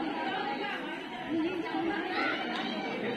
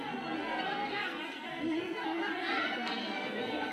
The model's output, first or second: second